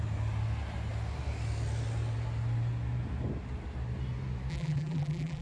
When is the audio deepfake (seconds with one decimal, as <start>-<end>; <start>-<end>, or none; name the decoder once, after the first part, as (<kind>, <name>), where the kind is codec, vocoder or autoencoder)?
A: 4.5-5.4 (vocoder, BigVGAN v2)